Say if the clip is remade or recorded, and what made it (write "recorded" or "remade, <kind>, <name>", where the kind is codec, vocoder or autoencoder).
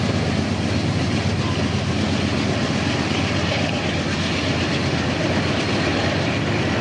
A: recorded